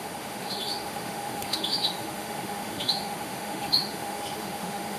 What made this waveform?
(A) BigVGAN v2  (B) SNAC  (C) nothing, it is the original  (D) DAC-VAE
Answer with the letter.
D